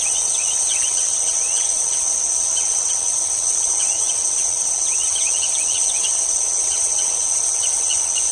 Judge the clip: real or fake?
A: fake